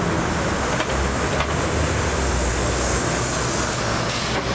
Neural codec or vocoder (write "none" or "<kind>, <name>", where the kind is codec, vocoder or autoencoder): none